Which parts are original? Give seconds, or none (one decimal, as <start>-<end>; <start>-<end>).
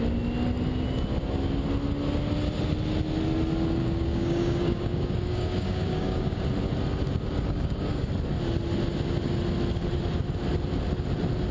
0.0-3.8; 6.4-7.3; 8.1-11.5